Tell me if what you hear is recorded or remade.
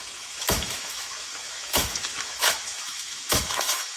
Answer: remade